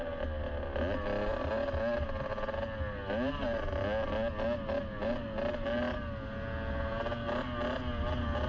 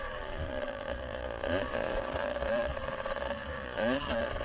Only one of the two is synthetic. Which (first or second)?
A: second